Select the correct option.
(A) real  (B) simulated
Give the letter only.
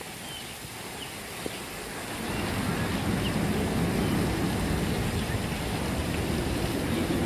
A